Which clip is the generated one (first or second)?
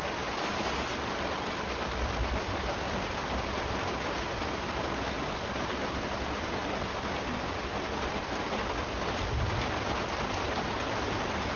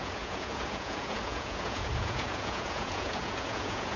second